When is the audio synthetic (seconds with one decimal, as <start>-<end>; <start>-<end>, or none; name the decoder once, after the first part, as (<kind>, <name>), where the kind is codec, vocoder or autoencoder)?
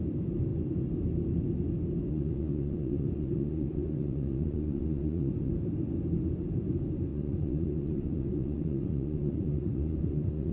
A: 2.1-5.5 (vocoder, Vocos); 7.1-10.5